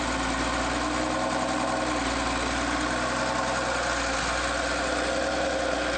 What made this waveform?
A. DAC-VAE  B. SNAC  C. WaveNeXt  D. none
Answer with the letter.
D